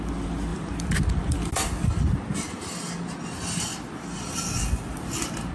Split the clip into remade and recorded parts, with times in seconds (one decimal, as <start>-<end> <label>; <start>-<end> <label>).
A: 0.0-0.5 recorded; 0.5-1.5 remade; 1.5-3.7 recorded; 3.7-4.3 remade; 4.3-5.5 recorded